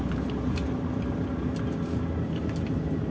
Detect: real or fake real